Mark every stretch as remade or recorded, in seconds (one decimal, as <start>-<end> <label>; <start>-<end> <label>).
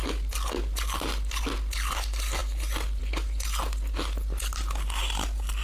0.0-5.6 recorded